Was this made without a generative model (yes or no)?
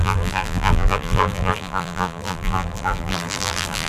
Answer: no